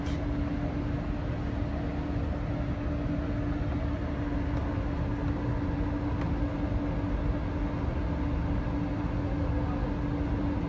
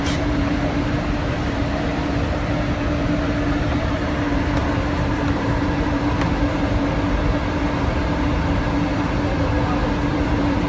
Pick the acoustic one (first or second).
first